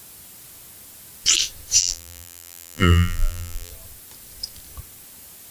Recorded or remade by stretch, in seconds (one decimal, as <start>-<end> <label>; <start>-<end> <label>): 0.0-1.8 recorded; 1.8-3.7 remade; 3.7-5.5 recorded

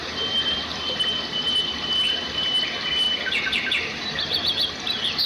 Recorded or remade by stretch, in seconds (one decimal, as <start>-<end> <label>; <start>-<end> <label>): 0.0-5.3 remade

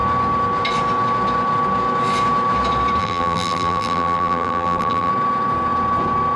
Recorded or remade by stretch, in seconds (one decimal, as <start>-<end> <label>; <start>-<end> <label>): 0.0-3.0 recorded; 3.0-5.1 remade; 5.1-6.4 recorded

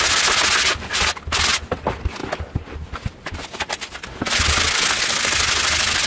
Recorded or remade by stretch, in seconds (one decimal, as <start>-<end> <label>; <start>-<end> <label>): 0.0-6.1 recorded

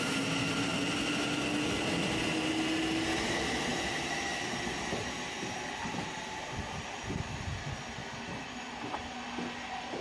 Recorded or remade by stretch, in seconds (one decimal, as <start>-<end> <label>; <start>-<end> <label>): 0.0-8.0 recorded; 8.0-8.6 remade; 8.6-10.0 recorded

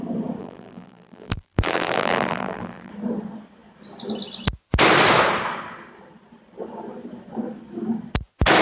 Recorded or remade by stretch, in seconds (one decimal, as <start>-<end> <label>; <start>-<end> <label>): 0.0-0.4 recorded; 0.4-2.9 remade; 2.9-8.6 recorded